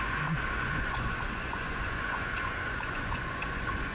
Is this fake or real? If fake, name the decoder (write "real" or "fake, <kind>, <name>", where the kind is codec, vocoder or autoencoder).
fake, vocoder, Vocos